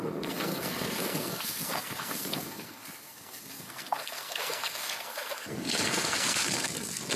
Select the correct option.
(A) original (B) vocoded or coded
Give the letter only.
B